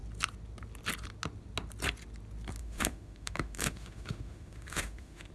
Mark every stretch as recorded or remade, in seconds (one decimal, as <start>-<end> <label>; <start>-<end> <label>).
0.0-2.6 recorded; 2.6-5.3 remade